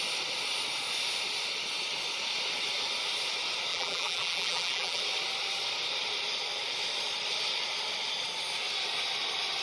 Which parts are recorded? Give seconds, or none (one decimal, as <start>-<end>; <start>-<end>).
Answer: 0.0-3.7; 5.0-9.6